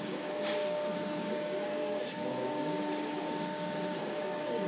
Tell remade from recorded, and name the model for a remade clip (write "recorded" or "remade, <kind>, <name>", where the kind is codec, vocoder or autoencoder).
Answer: remade, codec, DAC